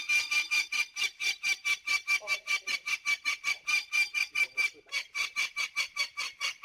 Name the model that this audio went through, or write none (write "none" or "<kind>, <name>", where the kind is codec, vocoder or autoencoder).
vocoder, BigVGAN v2